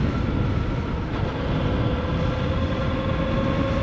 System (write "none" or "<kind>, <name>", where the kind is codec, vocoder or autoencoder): none